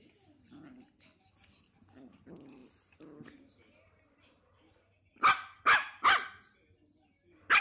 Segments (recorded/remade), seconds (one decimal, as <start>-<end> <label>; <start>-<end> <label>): 0.0-7.6 recorded